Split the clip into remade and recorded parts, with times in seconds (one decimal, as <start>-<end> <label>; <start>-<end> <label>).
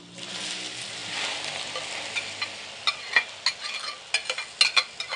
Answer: 0.0-5.2 recorded